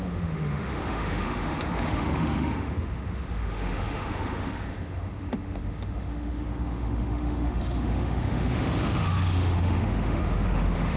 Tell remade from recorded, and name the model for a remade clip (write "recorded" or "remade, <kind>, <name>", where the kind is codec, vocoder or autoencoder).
remade, autoencoder, DAC-VAE